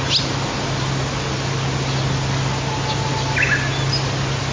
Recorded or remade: recorded